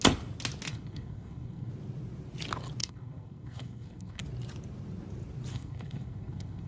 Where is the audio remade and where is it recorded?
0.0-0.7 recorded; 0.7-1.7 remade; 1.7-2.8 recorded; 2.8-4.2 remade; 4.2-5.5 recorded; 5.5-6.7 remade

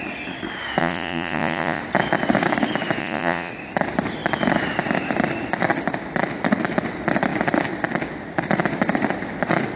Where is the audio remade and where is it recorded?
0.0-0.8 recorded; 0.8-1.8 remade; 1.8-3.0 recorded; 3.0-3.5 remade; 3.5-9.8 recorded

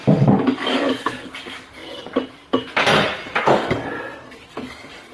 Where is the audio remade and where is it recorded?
0.0-1.8 remade; 1.8-3.4 recorded; 3.4-3.9 remade; 3.9-4.5 recorded; 4.5-5.1 remade